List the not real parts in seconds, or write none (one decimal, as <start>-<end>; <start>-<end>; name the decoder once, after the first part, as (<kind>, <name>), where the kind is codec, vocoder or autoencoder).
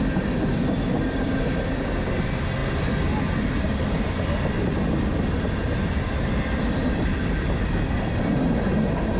none